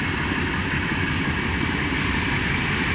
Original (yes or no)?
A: yes